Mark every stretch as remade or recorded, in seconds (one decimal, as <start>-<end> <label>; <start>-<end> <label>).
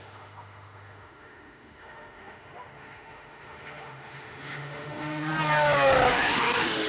0.0-5.3 remade; 5.3-6.1 recorded; 6.1-6.9 remade